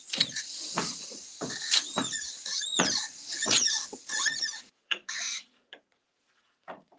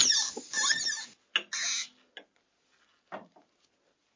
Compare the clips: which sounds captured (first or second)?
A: second